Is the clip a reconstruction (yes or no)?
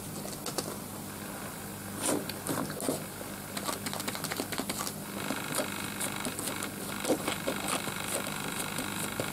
no